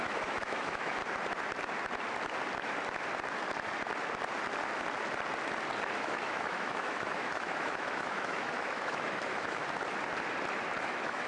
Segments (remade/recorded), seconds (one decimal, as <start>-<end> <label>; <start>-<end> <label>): 0.0-1.0 remade; 1.0-6.0 recorded; 6.0-9.6 remade; 9.6-10.9 recorded; 10.9-11.3 remade